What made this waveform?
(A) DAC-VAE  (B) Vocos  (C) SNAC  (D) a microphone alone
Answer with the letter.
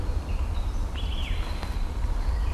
D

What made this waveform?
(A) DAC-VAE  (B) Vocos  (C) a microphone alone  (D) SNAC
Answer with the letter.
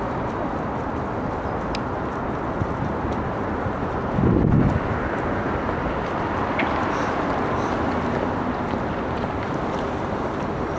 C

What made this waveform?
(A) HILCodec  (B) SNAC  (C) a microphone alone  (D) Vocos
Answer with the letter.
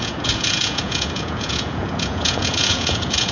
D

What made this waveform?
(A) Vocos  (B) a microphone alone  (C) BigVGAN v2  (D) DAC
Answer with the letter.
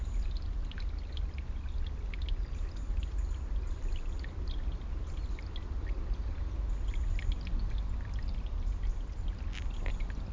B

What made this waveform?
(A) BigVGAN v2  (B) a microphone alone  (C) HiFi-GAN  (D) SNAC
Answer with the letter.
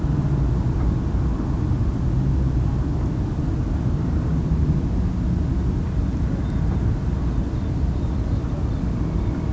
B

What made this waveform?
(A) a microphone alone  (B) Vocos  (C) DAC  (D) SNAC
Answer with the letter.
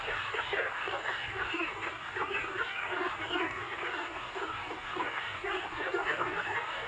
C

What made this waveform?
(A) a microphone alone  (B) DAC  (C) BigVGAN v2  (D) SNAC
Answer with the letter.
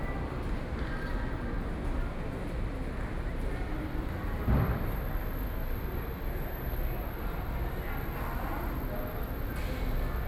A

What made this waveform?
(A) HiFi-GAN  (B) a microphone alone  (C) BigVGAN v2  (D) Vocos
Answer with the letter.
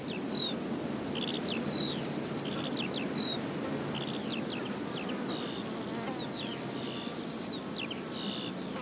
B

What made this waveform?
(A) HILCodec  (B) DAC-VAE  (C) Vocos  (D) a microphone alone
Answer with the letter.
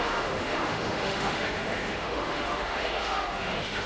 B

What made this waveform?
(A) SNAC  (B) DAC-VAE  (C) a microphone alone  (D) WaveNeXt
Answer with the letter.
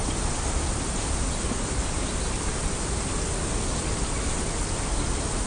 C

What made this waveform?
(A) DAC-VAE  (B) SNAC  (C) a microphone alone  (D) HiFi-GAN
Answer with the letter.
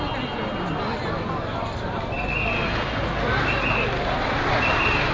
C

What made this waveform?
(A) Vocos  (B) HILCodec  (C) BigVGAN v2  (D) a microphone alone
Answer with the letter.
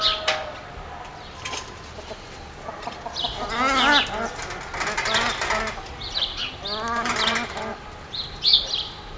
D